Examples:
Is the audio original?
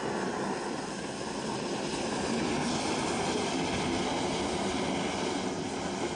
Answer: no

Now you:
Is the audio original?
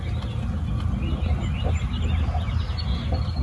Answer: yes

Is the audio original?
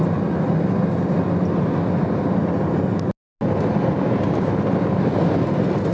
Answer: yes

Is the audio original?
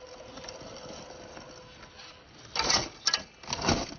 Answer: yes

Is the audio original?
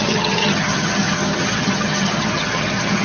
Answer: no